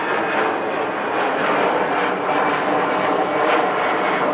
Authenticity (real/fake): real